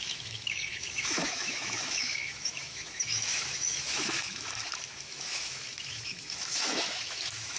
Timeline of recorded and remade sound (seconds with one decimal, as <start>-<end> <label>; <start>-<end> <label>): 0.0-7.6 remade